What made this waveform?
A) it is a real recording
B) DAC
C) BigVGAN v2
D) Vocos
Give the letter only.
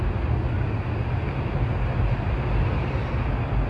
A